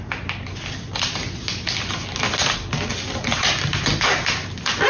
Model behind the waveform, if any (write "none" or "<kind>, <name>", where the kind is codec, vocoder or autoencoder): none